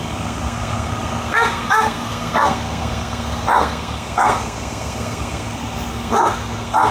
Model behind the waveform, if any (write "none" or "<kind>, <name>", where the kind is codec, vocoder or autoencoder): codec, SNAC